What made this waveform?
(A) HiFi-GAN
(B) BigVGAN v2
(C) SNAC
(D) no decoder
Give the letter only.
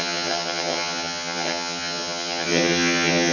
A